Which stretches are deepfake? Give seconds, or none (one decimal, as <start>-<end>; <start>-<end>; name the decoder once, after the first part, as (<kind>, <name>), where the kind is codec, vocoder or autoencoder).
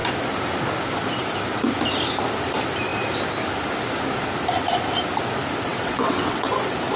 5.7-6.5 (vocoder, WaveNeXt)